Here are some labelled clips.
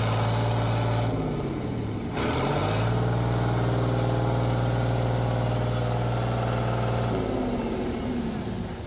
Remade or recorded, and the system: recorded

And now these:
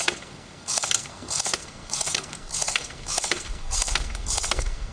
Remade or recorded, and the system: remade, codec, SNAC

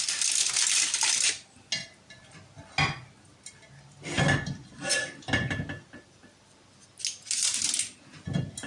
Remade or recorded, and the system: recorded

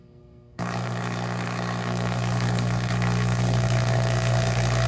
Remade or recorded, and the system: remade, codec, SNAC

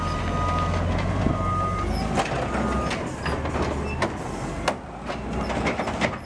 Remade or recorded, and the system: recorded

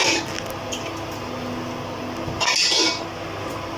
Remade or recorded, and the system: recorded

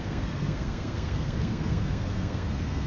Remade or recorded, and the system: remade, codec, SNAC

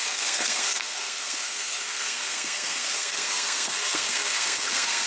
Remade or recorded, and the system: remade, codec, SNAC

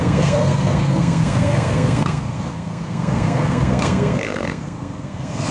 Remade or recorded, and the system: remade, codec, SNAC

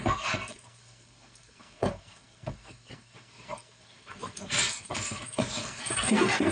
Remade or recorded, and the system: remade, codec, SNAC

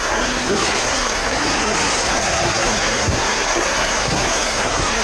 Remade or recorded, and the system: remade, codec, SNAC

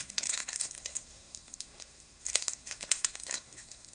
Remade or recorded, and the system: remade, codec, SNAC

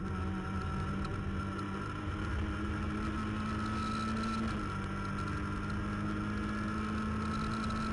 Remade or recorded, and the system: recorded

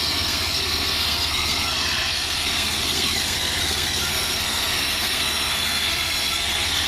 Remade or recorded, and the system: remade, codec, SNAC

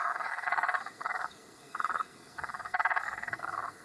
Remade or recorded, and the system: remade, codec, SNAC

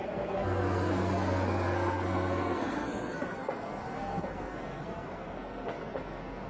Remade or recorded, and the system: remade, codec, SNAC